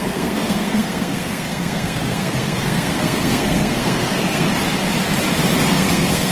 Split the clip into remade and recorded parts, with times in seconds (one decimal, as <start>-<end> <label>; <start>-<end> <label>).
0.0-4.5 remade; 4.5-5.6 recorded; 5.6-6.3 remade